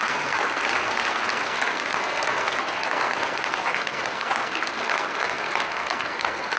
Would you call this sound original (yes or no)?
no